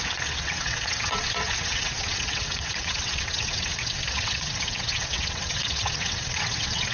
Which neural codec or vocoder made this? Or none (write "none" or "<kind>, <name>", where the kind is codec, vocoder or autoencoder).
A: vocoder, WaveNeXt